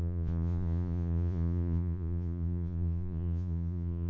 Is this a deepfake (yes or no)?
yes